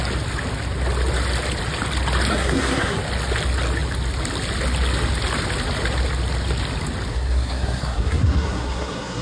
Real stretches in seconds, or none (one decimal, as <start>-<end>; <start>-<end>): 0.0-2.3; 3.0-7.1